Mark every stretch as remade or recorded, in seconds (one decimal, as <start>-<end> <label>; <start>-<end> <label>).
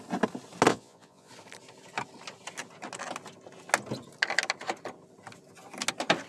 0.0-0.7 recorded; 0.7-1.3 remade; 1.3-6.3 recorded